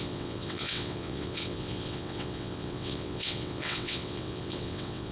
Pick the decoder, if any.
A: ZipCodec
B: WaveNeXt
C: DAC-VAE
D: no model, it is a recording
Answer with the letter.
B